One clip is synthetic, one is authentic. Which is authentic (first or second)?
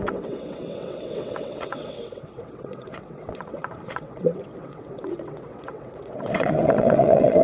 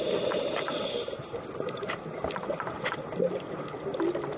second